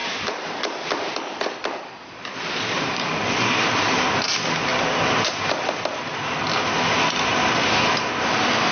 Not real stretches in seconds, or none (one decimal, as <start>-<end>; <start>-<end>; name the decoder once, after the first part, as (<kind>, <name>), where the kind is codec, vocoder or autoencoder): 0.0-4.0 (vocoder, BigVGAN v2)